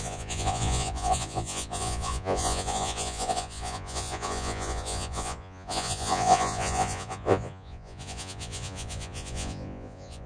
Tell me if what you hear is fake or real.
fake